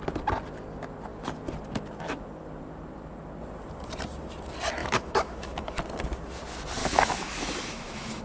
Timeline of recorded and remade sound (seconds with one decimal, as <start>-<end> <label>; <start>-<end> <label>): 0.0-4.8 recorded; 4.8-5.8 remade; 5.8-6.8 recorded; 6.8-8.2 remade

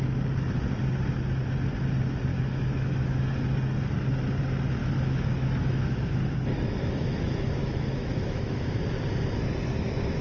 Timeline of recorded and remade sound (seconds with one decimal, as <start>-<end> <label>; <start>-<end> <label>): 0.0-2.3 recorded; 2.3-3.2 remade; 3.2-4.8 recorded; 4.8-8.7 remade; 8.7-10.2 recorded